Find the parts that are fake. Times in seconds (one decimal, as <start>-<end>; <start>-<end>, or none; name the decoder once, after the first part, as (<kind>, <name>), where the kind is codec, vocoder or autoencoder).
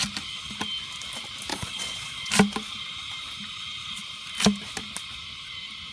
1.5-2.3 (vocoder, Vocos)